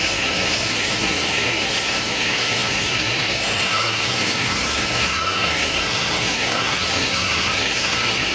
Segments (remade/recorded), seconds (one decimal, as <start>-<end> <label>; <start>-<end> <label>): 0.0-8.3 remade